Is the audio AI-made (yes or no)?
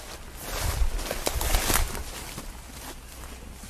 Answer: no